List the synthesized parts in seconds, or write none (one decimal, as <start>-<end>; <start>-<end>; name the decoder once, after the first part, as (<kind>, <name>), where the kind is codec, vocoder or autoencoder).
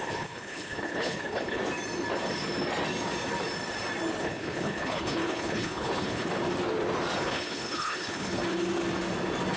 0.0-1.6 (codec, HILCodec); 4.2-6.3; 7.2-8.4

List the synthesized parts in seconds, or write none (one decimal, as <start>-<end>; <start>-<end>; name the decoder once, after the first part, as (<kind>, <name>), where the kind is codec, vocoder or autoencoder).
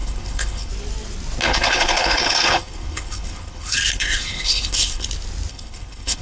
0.0-0.7 (codec, HILCodec); 1.4-5.1; 5.5-6.2